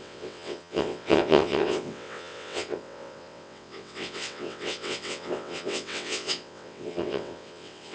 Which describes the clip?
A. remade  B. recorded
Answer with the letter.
A